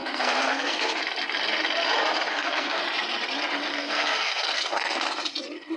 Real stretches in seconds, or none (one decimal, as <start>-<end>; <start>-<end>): 1.0-2.3; 2.8-3.7; 5.1-5.8